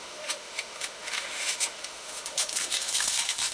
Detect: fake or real fake